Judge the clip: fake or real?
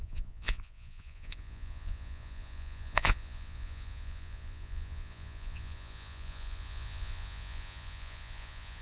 fake